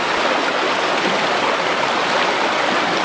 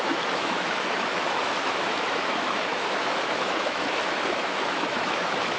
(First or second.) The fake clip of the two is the second